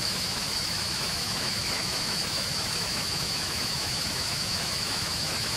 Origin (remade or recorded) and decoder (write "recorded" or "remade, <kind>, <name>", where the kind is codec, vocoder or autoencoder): remade, autoencoder, DAC-VAE